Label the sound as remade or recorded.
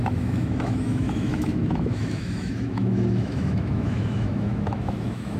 remade